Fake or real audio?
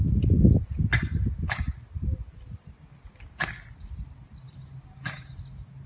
real